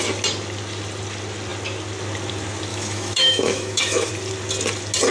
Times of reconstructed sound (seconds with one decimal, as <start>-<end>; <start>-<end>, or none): 2.7-4.1

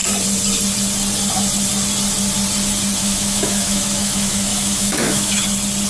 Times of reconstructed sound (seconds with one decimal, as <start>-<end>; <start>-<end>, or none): 3.0-5.4

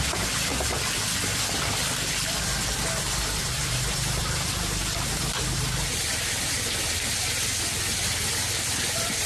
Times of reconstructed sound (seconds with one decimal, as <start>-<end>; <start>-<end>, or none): 3.4-4.2

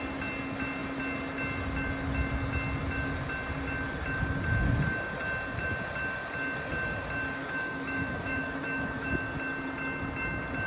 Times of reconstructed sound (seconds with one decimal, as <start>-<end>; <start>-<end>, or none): 7.4-9.1

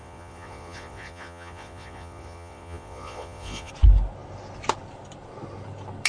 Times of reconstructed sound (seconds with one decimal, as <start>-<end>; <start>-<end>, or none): 0.0-3.7

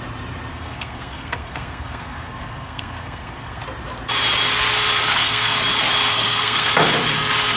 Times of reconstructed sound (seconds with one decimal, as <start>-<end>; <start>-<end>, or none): 0.5-3.6; 5.1-5.6; 6.1-6.7

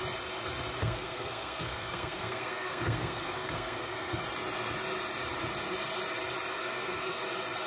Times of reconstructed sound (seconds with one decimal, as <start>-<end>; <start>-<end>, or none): 0.8-4.2; 6.6-7.2